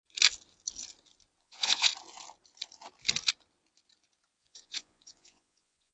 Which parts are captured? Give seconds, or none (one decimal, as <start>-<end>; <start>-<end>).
0.0-1.4; 1.9-4.4